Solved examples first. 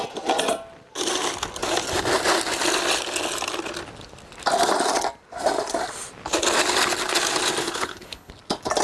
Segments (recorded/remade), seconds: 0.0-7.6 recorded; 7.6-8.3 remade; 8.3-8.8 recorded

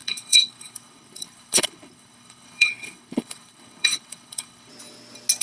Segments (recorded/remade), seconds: 0.0-4.7 remade; 4.7-5.4 recorded